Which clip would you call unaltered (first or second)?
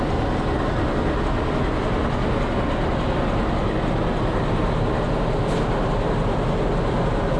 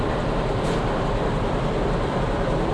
first